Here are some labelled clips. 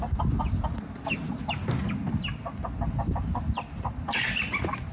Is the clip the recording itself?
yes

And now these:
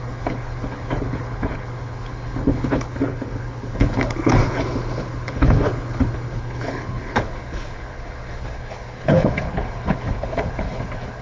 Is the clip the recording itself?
no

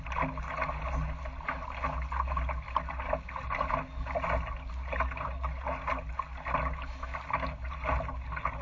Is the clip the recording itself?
yes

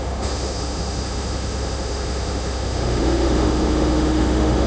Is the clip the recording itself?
no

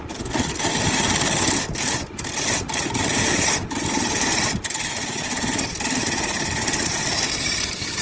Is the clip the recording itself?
yes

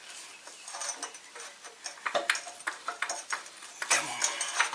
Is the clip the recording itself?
yes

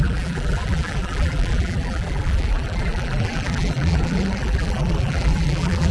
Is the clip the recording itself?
no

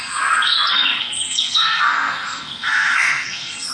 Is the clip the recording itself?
no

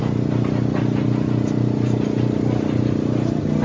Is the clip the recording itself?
yes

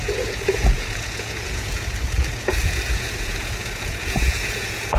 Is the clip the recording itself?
no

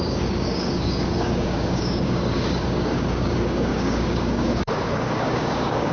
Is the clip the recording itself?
no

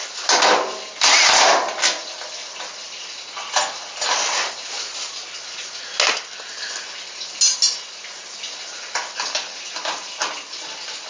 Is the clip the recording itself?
yes